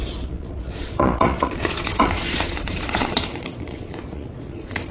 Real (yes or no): no